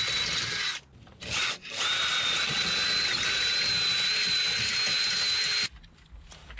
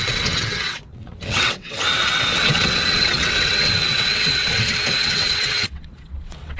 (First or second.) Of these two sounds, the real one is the first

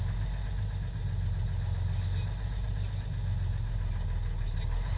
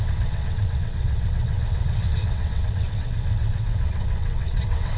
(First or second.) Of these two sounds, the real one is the first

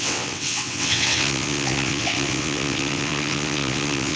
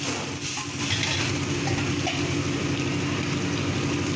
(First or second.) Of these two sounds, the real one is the second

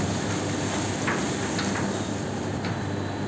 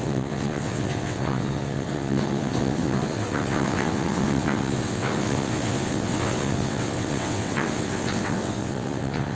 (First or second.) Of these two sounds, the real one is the first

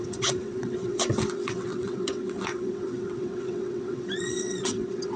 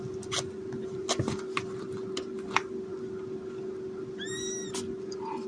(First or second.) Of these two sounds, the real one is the second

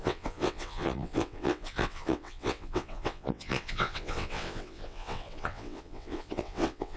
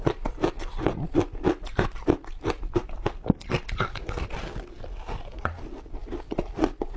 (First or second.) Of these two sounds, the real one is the second